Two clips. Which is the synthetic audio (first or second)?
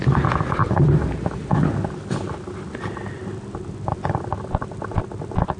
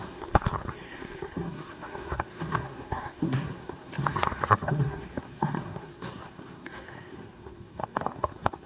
second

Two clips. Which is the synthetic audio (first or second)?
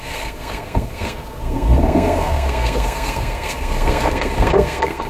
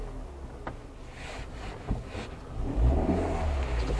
first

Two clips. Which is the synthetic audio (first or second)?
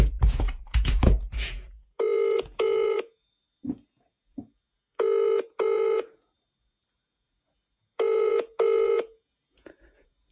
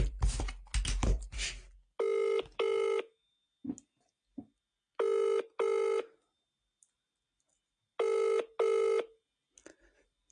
first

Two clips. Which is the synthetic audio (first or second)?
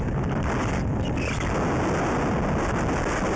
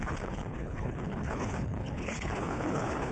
second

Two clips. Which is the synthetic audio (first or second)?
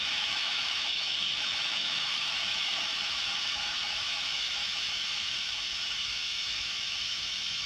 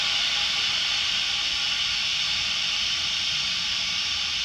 first